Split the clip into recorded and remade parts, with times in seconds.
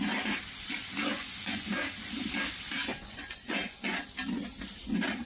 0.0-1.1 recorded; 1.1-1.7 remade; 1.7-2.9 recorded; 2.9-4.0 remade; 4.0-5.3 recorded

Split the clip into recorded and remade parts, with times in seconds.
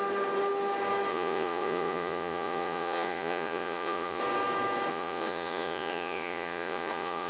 0.0-1.1 recorded; 1.1-4.2 remade; 4.2-4.9 recorded; 4.9-7.3 remade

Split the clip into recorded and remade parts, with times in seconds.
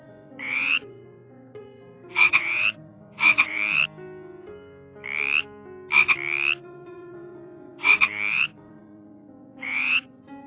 0.0-3.8 remade; 3.8-6.6 recorded; 6.6-10.5 remade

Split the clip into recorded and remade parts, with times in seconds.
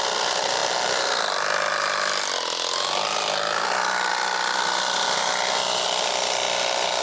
0.0-7.0 recorded